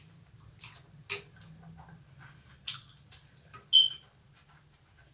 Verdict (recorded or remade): recorded